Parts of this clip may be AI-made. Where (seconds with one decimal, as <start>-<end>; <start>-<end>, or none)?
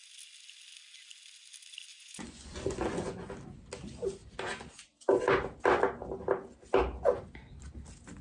1.9-3.3